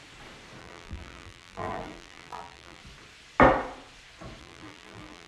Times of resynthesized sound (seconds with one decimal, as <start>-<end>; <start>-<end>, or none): 0.6-2.8; 4.4-5.3